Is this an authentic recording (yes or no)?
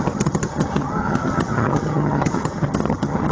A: no